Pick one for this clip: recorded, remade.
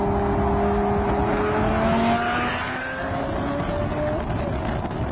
recorded